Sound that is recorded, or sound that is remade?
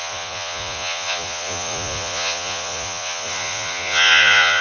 remade